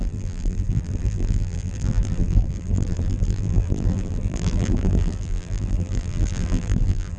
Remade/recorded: remade